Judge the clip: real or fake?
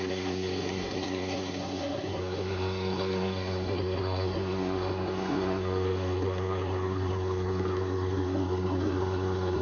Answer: fake